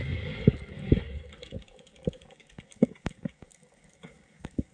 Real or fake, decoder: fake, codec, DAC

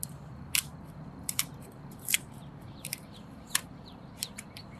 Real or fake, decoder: fake, vocoder, BigVGAN v2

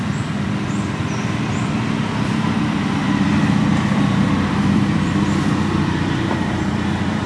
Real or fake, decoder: fake, vocoder, BigVGAN v2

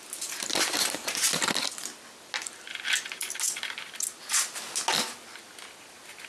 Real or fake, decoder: real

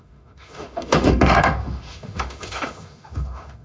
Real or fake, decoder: fake, autoencoder, DAC-VAE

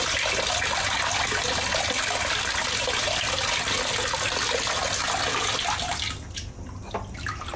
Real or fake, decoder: real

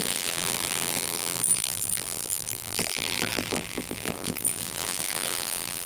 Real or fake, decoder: fake, vocoder, BigVGAN v2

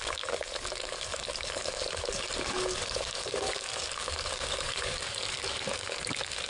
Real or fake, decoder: fake, codec, DAC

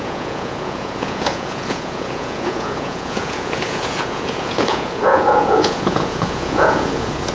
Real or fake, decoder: fake, vocoder, Vocos